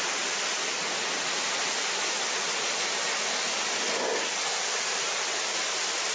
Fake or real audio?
real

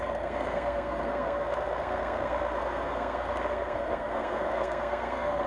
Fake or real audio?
fake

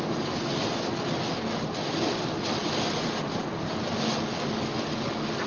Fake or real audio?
real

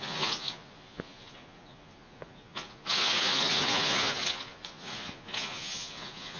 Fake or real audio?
fake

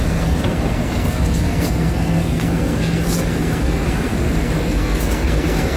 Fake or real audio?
fake